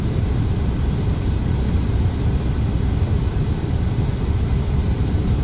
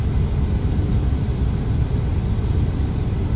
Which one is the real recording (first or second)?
second